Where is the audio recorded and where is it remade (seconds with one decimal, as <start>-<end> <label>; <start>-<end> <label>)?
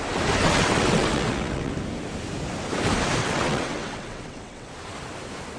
0.0-0.4 recorded; 0.4-1.7 remade; 1.7-3.2 recorded; 3.2-4.7 remade; 4.7-5.6 recorded